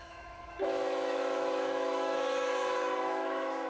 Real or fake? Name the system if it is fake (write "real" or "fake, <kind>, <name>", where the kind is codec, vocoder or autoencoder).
fake, autoencoder, DAC-VAE